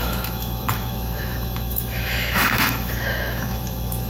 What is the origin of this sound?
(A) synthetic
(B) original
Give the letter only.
A